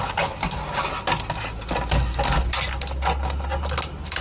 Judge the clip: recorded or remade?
recorded